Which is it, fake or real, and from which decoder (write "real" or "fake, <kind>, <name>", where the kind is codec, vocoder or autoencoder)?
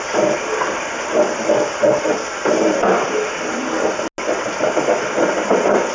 real